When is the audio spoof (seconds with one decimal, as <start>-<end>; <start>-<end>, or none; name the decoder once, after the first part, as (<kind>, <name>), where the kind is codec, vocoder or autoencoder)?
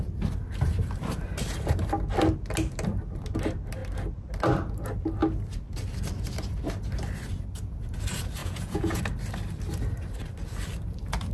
8.4-9.0 (vocoder, Vocos)